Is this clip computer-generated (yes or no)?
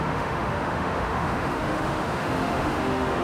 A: yes